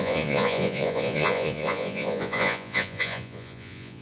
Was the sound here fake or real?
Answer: fake